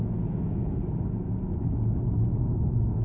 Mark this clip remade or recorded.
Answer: recorded